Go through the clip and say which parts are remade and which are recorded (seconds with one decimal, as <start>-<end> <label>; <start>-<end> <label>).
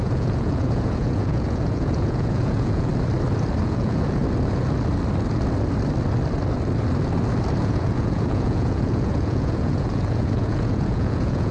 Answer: 0.0-2.9 remade; 2.9-3.6 recorded; 3.6-4.2 remade; 4.2-7.6 recorded; 7.6-11.5 remade